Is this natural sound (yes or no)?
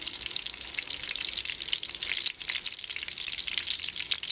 yes